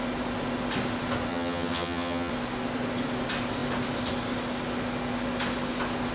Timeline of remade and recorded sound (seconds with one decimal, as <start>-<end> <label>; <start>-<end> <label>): 0.0-1.3 recorded; 1.3-2.3 remade; 2.3-6.1 recorded